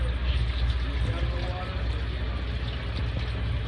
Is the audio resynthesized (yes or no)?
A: no